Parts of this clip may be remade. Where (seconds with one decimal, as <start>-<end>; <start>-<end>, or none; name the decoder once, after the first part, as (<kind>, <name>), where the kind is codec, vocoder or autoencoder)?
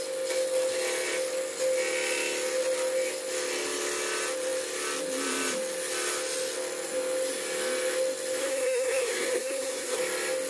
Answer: 8.4-10.0 (codec, SNAC)